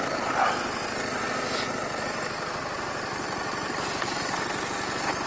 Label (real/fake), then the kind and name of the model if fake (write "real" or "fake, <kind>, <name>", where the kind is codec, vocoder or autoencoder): real